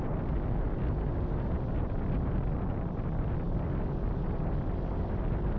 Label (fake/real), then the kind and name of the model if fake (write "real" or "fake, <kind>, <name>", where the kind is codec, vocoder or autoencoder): real